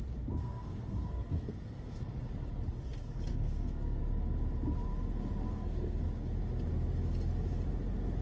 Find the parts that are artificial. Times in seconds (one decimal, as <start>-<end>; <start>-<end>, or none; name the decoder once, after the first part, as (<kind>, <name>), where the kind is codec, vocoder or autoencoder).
0.4-2.2 (codec, SNAC); 3.3-4.0; 5.4-6.0